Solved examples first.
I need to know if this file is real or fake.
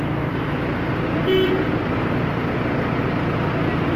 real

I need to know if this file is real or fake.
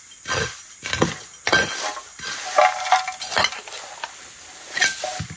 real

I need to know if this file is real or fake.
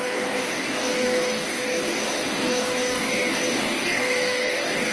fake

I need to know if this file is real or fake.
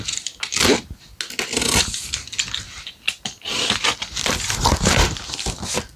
real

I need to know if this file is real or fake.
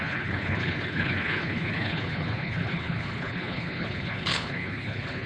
fake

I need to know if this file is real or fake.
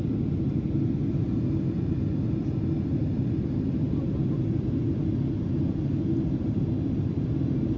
real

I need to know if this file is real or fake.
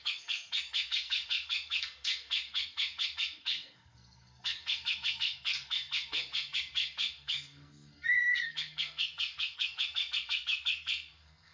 fake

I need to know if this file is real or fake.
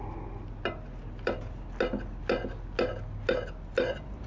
real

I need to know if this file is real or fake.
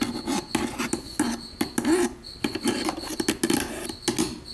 real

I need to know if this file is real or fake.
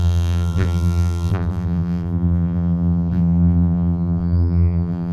fake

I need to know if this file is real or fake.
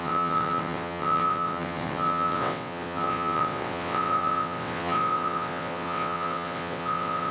fake